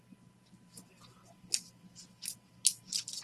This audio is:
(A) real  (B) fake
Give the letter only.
A